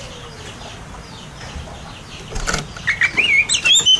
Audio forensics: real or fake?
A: real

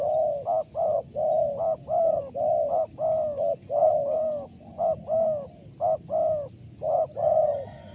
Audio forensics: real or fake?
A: real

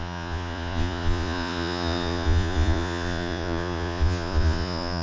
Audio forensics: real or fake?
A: fake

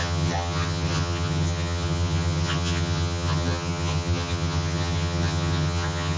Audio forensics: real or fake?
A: fake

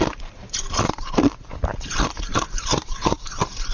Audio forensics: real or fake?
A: fake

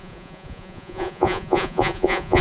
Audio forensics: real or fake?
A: fake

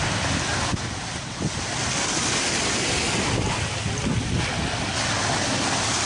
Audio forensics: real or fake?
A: real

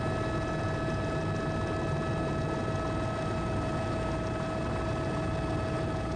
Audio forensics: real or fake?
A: real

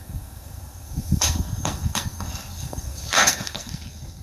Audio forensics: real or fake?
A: fake